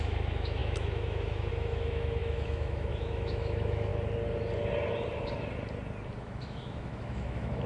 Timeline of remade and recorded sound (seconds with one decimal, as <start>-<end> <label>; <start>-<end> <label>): 0.0-3.9 remade; 3.9-6.2 recorded; 6.2-7.7 remade